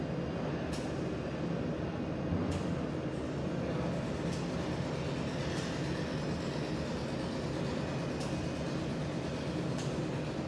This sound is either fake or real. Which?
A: real